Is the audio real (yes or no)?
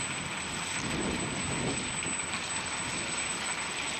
yes